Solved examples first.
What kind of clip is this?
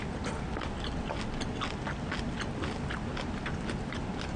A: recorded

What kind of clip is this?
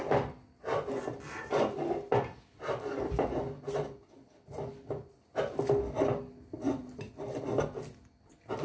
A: recorded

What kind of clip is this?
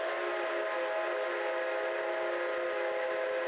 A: recorded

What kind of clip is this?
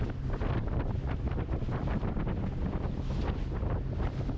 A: recorded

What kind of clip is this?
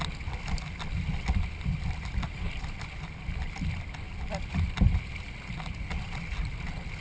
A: recorded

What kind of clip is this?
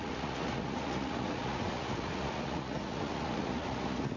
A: remade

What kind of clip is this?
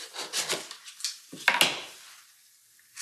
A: recorded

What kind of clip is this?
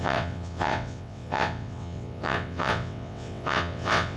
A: remade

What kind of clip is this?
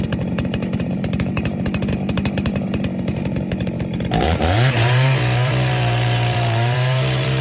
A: remade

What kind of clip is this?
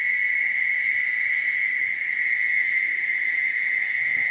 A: recorded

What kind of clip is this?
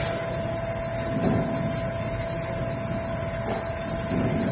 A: recorded